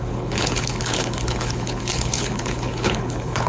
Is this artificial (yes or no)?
yes